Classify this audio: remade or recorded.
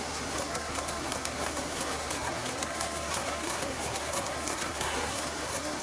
remade